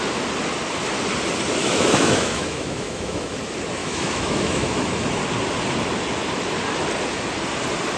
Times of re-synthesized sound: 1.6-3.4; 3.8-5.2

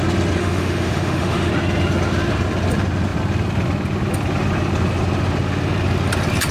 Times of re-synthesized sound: 0.4-1.5